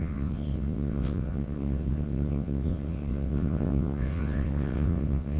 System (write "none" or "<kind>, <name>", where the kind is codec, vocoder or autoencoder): vocoder, WaveNeXt